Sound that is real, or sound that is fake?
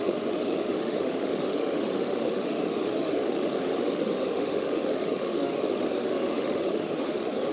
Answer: fake